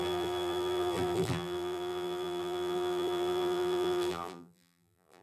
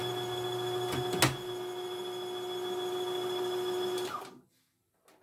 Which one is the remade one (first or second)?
first